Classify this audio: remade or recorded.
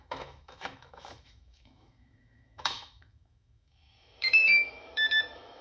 remade